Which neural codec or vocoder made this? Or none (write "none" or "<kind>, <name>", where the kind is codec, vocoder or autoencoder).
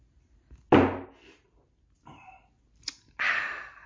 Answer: none